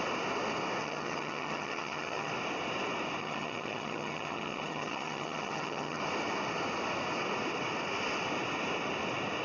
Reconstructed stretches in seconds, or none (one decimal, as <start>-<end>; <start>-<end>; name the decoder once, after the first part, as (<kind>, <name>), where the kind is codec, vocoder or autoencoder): 0.8-2.3 (vocoder, HiFi-GAN); 3.2-6.0